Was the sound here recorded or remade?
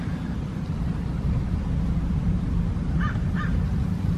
recorded